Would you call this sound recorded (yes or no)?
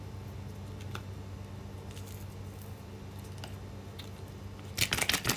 yes